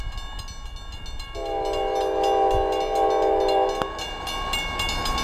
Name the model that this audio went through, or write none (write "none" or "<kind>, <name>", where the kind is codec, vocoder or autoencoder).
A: none